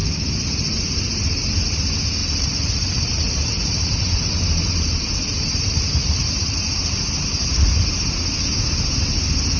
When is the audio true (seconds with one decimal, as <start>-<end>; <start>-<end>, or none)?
1.6-2.2; 7.0-9.6